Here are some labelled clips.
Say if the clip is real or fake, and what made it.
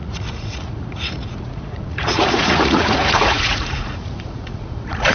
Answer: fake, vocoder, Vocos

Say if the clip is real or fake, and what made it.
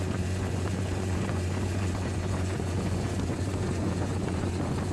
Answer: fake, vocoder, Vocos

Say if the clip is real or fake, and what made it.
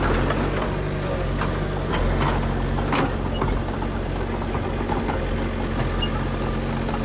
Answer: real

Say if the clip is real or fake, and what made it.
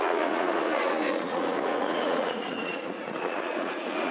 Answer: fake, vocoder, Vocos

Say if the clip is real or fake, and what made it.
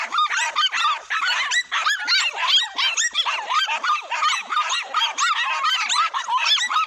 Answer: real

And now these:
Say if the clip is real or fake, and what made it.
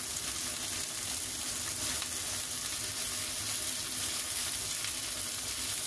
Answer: real